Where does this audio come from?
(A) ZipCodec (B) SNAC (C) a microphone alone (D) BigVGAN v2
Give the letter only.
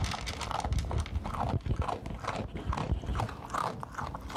C